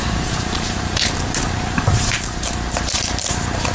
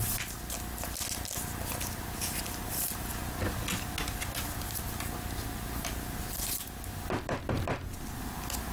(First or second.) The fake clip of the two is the first